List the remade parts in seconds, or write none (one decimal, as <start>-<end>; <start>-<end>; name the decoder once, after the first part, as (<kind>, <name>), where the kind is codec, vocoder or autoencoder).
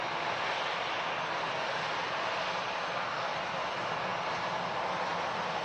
none